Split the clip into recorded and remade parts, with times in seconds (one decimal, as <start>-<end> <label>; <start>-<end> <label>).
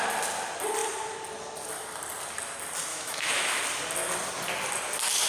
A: 0.0-2.9 recorded; 2.9-3.6 remade; 3.6-5.3 recorded